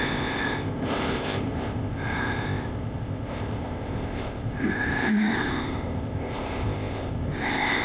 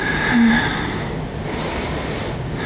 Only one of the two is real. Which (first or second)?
second